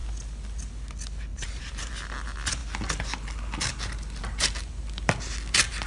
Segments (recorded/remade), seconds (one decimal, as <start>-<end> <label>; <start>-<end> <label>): 0.0-1.3 recorded; 1.3-1.9 remade; 1.9-5.9 recorded